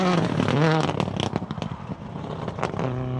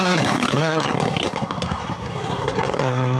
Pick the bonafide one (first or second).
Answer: first